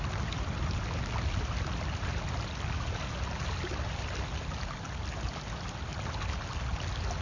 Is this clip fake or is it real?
real